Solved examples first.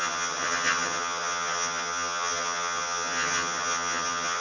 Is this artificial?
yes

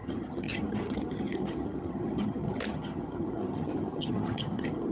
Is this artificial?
yes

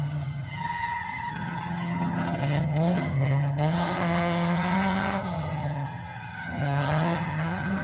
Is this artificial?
yes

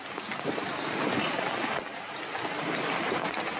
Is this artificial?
no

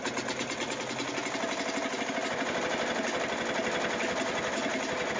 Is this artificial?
no